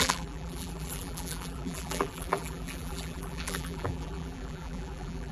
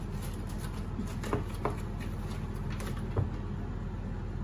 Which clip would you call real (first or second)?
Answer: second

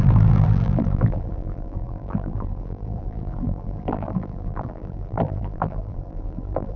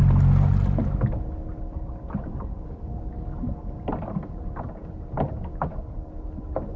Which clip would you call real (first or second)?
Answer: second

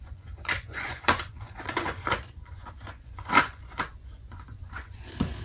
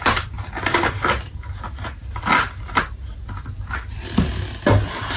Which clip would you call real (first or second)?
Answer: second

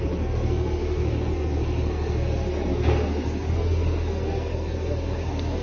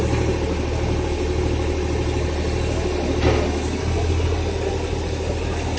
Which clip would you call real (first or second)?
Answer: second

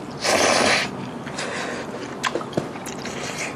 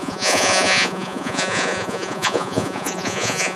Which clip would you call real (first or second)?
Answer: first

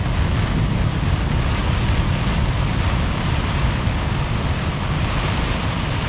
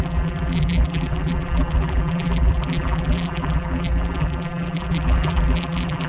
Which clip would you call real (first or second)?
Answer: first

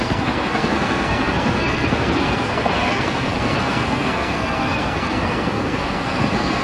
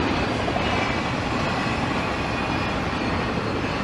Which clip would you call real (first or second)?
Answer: second